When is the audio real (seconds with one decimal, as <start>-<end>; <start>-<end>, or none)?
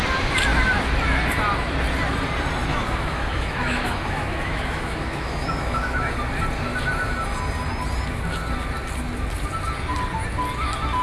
0.0-2.7; 6.1-11.0